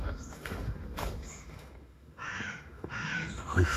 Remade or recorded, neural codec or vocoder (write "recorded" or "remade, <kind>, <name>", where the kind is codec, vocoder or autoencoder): remade, autoencoder, DAC-VAE